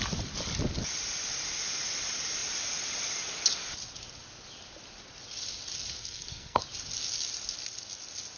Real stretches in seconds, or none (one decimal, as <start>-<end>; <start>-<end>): 0.0-6.0; 6.6-8.4